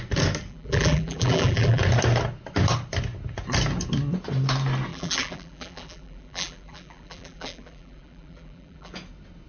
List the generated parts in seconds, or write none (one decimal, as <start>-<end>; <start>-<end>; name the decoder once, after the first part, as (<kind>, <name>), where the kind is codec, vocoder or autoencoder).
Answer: 0.5-1.8 (vocoder, BigVGAN v2); 4.9-8.9